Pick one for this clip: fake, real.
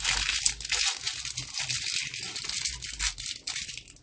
real